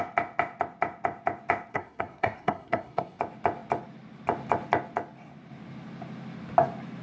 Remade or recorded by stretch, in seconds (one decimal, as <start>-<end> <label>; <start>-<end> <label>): 0.0-1.7 recorded; 1.7-3.2 remade; 3.2-7.0 recorded